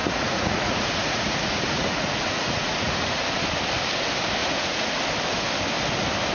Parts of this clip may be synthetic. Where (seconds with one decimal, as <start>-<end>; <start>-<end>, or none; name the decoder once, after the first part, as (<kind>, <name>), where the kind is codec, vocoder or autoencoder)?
0.0-3.2 (vocoder, Vocos); 4.4-5.0